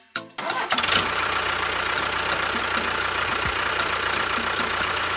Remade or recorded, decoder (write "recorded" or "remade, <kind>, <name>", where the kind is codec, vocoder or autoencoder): remade, vocoder, BigVGAN v2